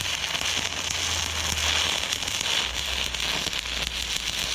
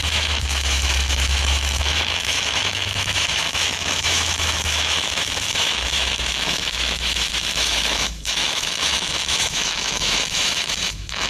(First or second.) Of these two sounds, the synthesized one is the second